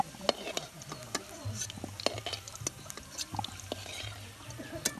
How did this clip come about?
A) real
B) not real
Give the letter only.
A